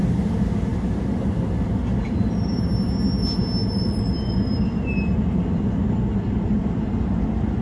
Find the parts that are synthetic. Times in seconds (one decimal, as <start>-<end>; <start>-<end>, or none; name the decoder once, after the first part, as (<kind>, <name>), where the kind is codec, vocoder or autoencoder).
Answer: none